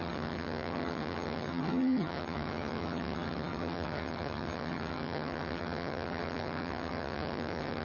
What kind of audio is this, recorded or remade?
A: remade